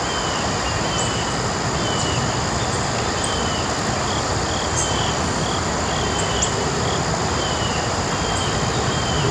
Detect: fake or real real